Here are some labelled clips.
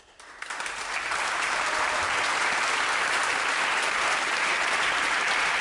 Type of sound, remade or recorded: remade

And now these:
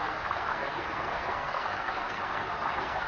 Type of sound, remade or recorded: remade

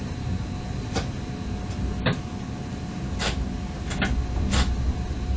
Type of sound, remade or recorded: recorded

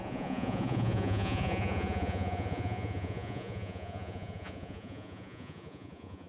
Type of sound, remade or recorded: remade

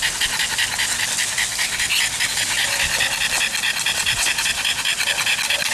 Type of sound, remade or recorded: recorded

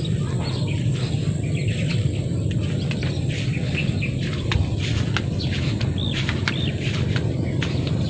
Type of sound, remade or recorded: recorded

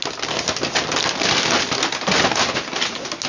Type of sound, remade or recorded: recorded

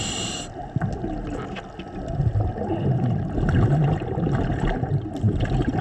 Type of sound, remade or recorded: recorded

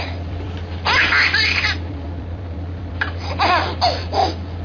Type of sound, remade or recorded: remade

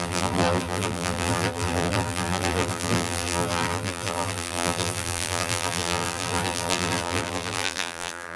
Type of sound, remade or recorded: remade